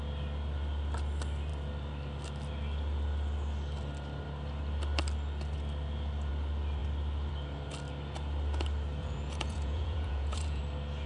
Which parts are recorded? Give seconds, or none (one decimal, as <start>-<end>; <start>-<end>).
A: 0.0-9.0; 10.6-11.1